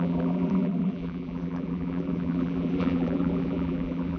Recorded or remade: remade